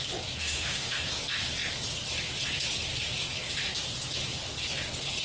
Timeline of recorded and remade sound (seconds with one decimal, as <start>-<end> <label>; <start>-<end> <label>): 0.0-0.4 recorded; 0.4-1.0 remade; 1.0-5.2 recorded